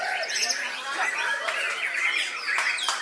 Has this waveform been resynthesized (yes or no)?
no